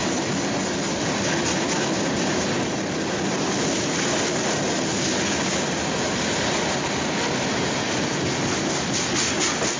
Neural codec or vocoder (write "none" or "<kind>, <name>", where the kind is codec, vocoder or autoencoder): none